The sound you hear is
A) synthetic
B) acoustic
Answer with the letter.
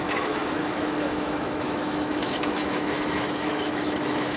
A